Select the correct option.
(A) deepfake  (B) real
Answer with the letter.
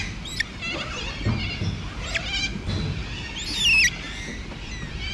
B